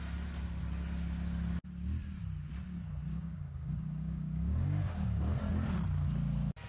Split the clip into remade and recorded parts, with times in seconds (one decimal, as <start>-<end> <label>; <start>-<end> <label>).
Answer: 0.0-3.1 recorded; 3.1-5.4 remade; 5.4-6.7 recorded